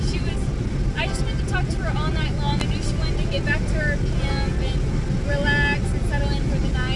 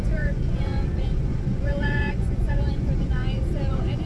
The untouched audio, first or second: first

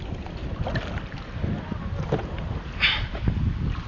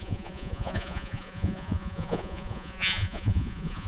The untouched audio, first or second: first